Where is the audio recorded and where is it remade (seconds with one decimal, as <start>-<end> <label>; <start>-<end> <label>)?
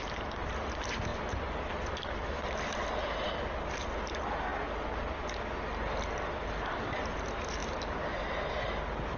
0.0-9.2 recorded